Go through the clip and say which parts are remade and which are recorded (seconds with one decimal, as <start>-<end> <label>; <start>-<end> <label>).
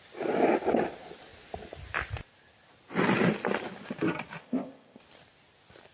0.0-4.4 recorded; 4.4-5.0 remade; 5.0-5.9 recorded